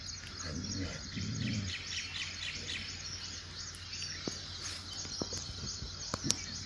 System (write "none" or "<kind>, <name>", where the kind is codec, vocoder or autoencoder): none